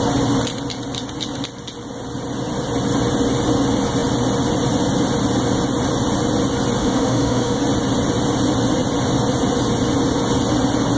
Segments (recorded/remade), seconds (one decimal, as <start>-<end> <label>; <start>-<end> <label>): 0.0-6.8 recorded; 6.8-7.6 remade; 7.6-11.0 recorded